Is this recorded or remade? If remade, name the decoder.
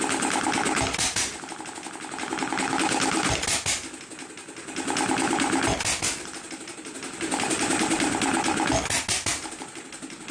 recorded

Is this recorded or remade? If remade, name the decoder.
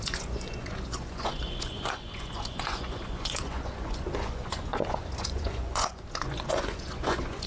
remade, vocoder, Vocos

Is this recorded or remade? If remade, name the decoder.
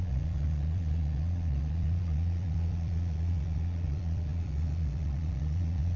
remade, vocoder, Vocos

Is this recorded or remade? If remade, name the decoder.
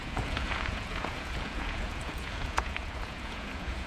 remade, vocoder, Vocos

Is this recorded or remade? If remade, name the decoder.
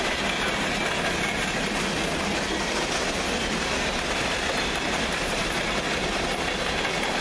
recorded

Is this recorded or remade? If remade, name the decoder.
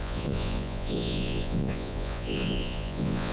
remade, vocoder, Vocos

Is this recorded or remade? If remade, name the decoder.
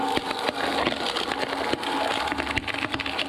recorded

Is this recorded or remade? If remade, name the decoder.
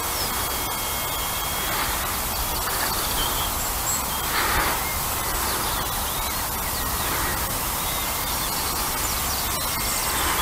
recorded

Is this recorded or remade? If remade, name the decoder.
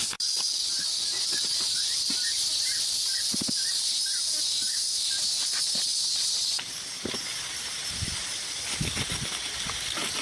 recorded